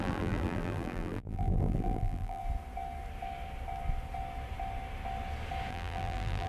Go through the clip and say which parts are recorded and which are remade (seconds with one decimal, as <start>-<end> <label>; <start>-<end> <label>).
0.0-2.4 remade; 2.4-5.7 recorded; 5.7-6.5 remade